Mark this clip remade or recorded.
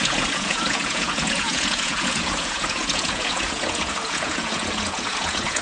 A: remade